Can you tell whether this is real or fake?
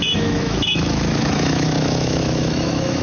fake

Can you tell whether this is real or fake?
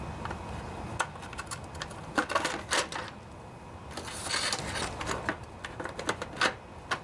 real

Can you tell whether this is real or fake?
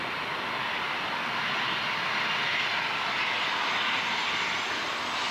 real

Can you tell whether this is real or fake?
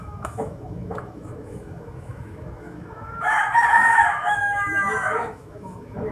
fake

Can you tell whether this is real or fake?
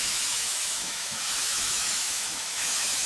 fake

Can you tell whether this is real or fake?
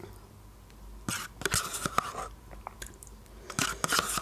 real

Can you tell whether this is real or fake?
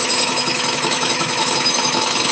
fake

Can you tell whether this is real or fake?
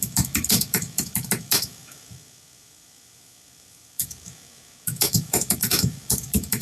fake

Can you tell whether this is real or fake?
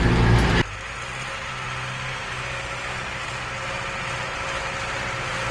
real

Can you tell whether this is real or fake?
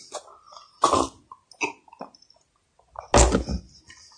real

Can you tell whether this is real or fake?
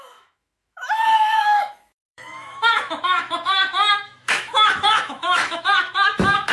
fake